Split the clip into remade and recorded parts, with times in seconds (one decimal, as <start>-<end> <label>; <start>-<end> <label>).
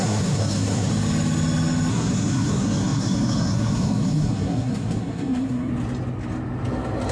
0.0-0.9 remade; 0.9-1.9 recorded; 1.9-5.7 remade; 5.7-7.1 recorded